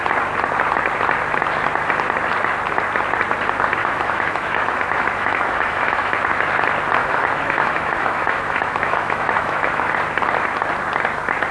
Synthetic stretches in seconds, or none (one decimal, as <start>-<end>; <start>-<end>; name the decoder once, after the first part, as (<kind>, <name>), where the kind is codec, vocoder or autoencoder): 3.8-6.1 (autoencoder, DAC-VAE); 7.0-9.9